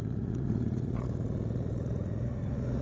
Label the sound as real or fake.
fake